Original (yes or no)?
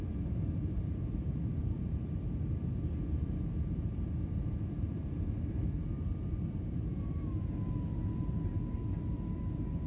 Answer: no